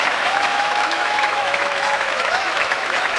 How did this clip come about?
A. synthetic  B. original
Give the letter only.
A